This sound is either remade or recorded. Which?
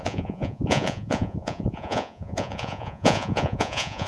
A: remade